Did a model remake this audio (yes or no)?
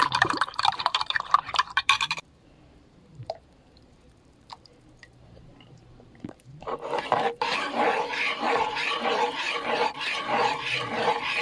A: yes